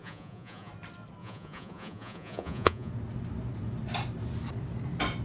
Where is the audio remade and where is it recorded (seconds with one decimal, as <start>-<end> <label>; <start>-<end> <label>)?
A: 0.0-0.7 remade; 0.7-1.2 recorded; 1.2-2.9 remade; 2.9-5.2 recorded